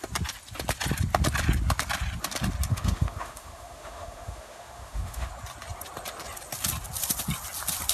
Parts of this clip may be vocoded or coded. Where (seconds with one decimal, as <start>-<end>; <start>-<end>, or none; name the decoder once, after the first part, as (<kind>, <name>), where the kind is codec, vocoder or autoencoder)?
2.7-5.3 (autoencoder, DAC-VAE)